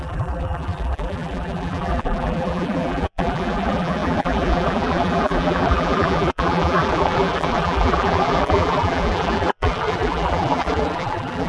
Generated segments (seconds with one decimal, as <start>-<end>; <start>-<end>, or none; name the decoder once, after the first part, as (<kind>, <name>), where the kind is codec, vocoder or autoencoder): 0.0-11.5 (vocoder, BigVGAN v2)